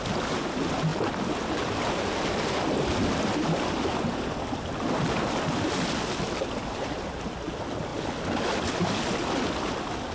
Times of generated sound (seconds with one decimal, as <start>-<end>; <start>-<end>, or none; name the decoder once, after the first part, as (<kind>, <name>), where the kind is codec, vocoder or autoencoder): none